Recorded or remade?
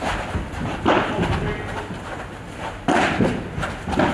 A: recorded